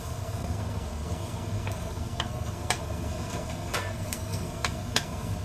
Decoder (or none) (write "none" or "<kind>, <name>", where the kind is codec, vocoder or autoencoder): codec, SNAC